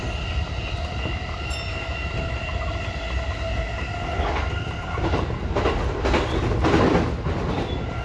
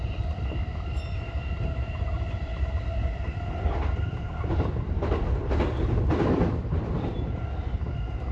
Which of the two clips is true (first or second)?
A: first